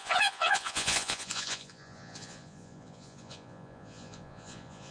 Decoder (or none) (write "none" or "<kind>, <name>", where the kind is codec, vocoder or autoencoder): vocoder, Vocos